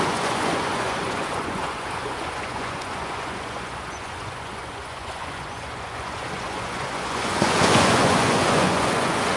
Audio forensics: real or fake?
fake